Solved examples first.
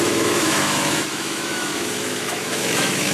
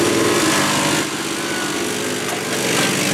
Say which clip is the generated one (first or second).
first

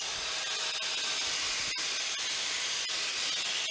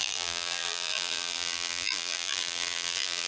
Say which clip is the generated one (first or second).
second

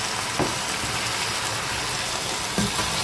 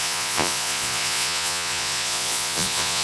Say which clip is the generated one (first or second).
second